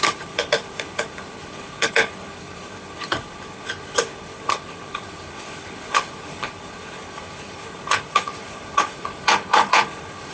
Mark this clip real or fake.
fake